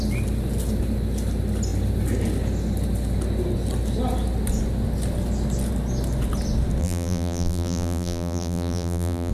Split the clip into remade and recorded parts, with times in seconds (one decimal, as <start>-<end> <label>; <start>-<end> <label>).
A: 0.0-6.8 recorded; 6.8-9.3 remade